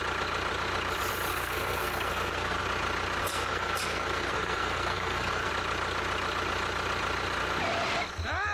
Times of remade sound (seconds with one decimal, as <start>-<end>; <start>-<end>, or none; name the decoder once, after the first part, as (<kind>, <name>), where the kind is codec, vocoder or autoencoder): 1.3-2.6 (codec, SNAC); 3.2-5.5